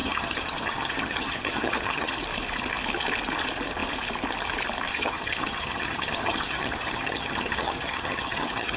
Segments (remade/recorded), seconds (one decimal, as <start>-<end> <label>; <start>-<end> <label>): 0.0-2.1 remade; 2.1-4.9 recorded; 4.9-8.8 remade